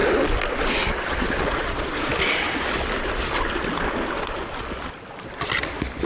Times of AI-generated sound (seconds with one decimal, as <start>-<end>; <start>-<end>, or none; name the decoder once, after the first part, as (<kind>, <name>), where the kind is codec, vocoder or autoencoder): 0.5-2.1 (vocoder, Vocos)